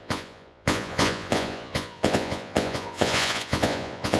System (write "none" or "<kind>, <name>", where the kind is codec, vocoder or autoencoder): vocoder, Vocos